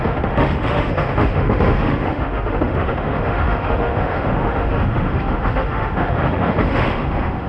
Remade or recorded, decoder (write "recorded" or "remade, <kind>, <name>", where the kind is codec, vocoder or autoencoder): remade, autoencoder, DAC-VAE